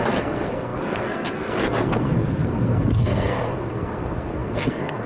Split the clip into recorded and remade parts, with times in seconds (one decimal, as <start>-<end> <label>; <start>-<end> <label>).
0.0-5.1 remade